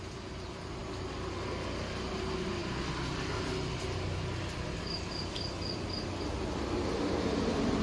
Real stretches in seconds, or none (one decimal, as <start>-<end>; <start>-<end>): 0.0-0.8; 2.0-2.6; 6.3-7.8